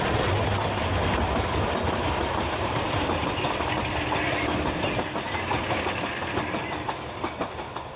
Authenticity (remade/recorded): recorded